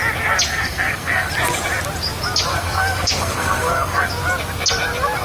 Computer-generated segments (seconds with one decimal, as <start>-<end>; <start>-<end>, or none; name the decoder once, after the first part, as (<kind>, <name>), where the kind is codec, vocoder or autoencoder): 0.5-1.3 (codec, SNAC); 2.5-4.1

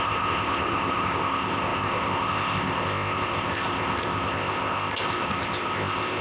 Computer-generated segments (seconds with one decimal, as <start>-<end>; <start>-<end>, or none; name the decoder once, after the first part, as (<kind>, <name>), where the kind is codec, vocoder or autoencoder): 0.0-6.2 (codec, ZipCodec)

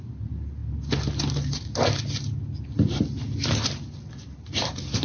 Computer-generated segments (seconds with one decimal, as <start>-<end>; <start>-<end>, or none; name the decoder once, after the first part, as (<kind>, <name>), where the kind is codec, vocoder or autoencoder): none